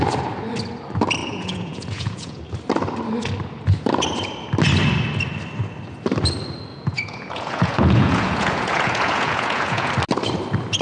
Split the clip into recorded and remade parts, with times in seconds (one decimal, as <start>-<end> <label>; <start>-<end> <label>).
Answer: 0.0-1.2 recorded; 1.2-2.4 remade; 2.4-6.7 recorded; 6.7-9.9 remade; 9.9-10.8 recorded